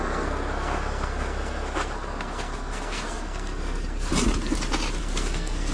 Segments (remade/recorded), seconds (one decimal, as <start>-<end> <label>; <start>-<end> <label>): 0.0-4.1 remade; 4.1-5.0 recorded; 5.0-5.7 remade